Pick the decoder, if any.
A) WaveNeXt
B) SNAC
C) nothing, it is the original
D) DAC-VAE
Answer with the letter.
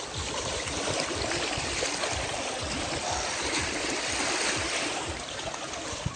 C